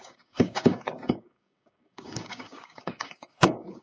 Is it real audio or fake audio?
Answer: fake